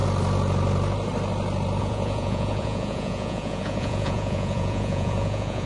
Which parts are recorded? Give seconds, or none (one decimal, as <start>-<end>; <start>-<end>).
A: 0.0-1.8